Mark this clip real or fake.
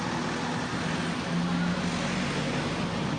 real